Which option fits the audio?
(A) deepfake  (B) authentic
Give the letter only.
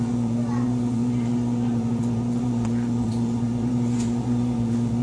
A